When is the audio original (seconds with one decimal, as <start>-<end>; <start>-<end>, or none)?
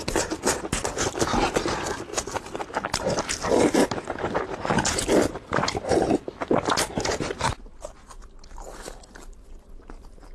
0.0-2.1; 2.6-10.3